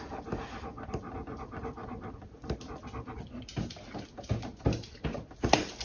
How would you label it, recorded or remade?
recorded